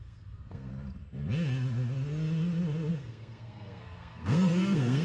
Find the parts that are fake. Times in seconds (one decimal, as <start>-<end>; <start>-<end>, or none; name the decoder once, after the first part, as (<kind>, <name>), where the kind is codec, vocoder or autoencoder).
0.0-0.7 (codec, SNAC); 2.9-5.0